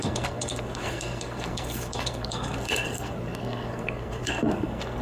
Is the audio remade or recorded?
remade